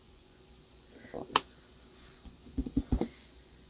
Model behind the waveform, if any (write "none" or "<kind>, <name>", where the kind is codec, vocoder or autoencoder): vocoder, Vocos